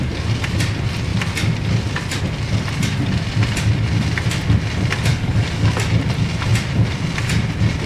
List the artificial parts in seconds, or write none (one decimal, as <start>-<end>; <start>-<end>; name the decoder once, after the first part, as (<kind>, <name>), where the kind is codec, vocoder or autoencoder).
5.1-5.7 (codec, DAC)